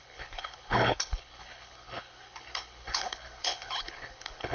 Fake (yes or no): yes